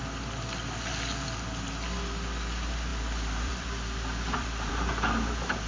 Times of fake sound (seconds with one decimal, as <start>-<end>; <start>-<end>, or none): 2.9-4.7